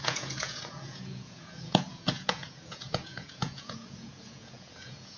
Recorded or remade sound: remade